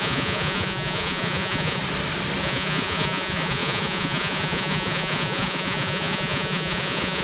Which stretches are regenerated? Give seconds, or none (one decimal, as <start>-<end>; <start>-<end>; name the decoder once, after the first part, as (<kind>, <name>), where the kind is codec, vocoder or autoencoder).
0.0-1.8 (vocoder, Vocos); 2.4-7.2